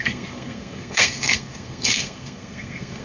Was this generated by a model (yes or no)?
yes